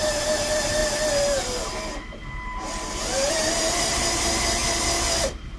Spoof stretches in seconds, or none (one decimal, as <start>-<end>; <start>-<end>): 0.0-0.8; 3.3-4.6